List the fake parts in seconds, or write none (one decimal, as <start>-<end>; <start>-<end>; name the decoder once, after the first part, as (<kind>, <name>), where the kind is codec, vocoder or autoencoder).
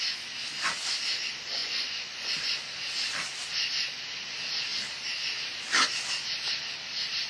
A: 1.6-2.3 (vocoder, Vocos)